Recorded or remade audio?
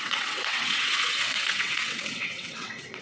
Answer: remade